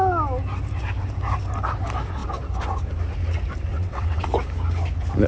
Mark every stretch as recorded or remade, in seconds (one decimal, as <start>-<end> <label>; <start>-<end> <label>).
0.0-3.7 recorded; 3.7-4.3 remade; 4.3-5.3 recorded